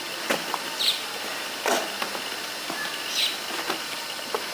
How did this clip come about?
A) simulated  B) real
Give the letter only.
B